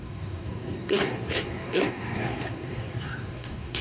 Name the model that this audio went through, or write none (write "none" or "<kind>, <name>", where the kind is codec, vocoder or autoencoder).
codec, SNAC